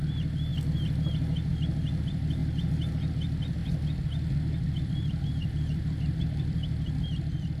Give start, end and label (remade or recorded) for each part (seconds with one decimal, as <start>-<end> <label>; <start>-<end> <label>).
0.0-0.5 remade; 0.5-2.0 recorded; 2.0-2.4 remade; 2.4-3.1 recorded; 3.1-3.6 remade; 3.6-4.8 recorded; 4.8-7.6 remade